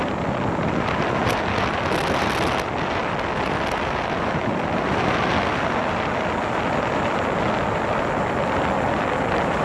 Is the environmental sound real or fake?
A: real